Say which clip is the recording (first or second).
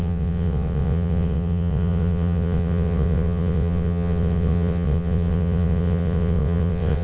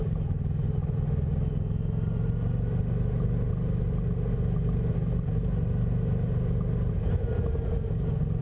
second